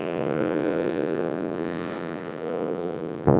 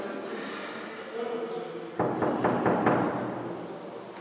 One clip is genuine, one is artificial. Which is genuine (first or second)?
second